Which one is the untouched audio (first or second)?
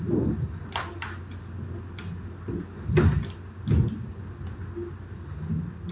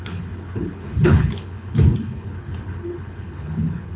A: first